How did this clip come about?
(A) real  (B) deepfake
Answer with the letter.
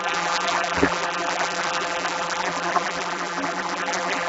B